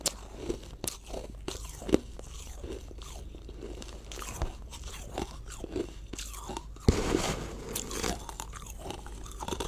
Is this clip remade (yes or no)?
no